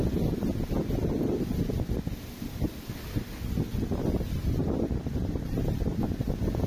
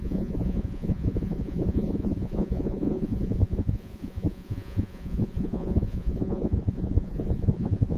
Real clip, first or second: first